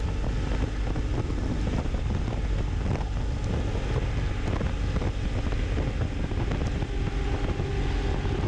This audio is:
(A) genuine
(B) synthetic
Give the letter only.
A